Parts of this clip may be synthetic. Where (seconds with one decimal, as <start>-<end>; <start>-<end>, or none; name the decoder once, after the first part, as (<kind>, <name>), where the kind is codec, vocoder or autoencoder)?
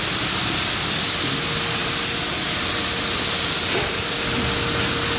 none